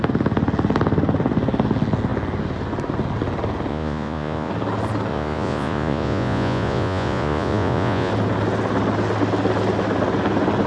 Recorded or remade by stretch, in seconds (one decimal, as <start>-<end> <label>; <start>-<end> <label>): 0.0-3.7 recorded; 3.7-4.5 remade; 4.5-5.1 recorded; 5.1-8.1 remade; 8.1-10.7 recorded